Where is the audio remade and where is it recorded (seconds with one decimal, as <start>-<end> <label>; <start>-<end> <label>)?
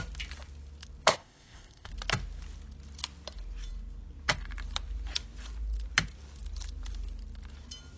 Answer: 0.0-1.1 recorded; 1.1-1.9 remade; 1.9-8.0 recorded